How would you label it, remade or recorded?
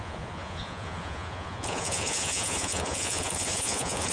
remade